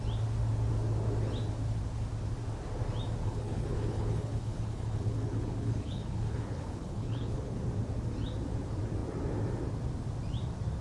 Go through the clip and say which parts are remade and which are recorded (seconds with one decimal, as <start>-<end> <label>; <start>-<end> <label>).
0.0-3.2 recorded; 3.2-7.6 remade; 7.6-10.8 recorded

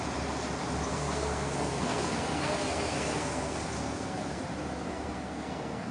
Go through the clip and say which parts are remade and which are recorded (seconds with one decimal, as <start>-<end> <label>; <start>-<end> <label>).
0.0-0.9 recorded; 0.9-4.4 remade; 4.4-4.9 recorded; 4.9-5.9 remade

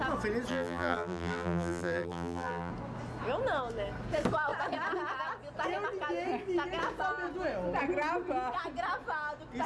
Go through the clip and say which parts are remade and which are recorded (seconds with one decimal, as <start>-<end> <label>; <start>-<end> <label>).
0.0-0.5 recorded; 0.5-2.7 remade; 2.7-9.7 recorded

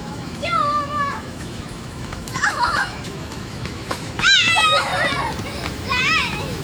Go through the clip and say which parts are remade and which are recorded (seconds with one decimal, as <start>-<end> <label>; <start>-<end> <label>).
0.0-4.9 remade; 4.9-5.7 recorded; 5.7-6.6 remade

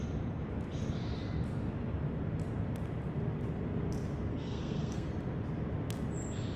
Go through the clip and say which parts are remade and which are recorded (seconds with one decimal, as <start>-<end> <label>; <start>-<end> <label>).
0.0-4.3 recorded; 4.3-5.1 remade; 5.1-6.6 recorded